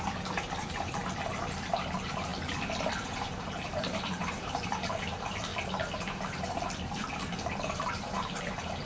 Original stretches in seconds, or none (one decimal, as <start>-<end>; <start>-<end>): 2.3-2.9; 5.5-6.4